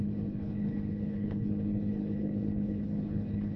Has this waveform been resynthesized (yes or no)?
yes